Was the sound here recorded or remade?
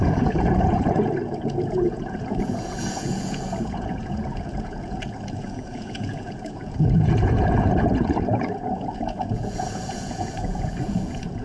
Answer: remade